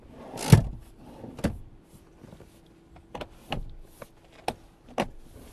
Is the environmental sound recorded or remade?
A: recorded